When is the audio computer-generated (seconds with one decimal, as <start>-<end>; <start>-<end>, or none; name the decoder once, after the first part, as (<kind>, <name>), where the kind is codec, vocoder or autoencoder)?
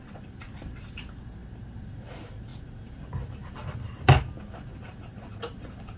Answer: 0.0-6.0 (vocoder, BigVGAN v2)